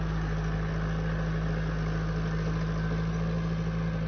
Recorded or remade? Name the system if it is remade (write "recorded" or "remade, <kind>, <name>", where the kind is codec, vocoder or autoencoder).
recorded